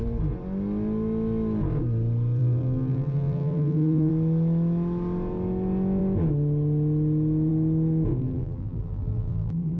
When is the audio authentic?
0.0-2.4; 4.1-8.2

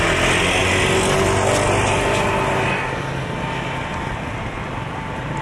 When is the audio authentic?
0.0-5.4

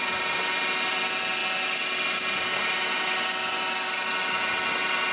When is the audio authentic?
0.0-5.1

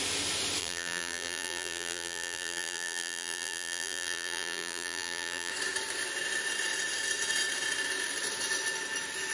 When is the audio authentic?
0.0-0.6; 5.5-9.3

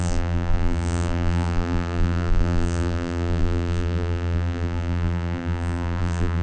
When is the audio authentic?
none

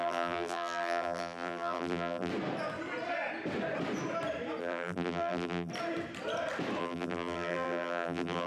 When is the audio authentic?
2.3-4.6; 5.7-6.8